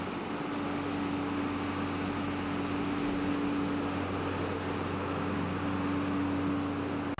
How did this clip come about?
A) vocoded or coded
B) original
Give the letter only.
B